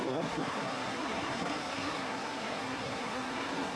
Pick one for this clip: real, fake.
fake